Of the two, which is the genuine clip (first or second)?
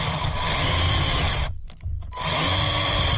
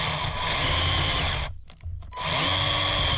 second